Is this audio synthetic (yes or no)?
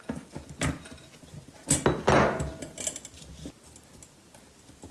no